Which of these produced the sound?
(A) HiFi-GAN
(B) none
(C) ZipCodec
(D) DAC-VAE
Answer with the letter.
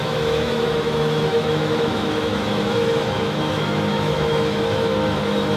D